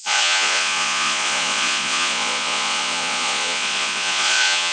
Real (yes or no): no